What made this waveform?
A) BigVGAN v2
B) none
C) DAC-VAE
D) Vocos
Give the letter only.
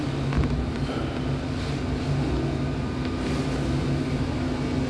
B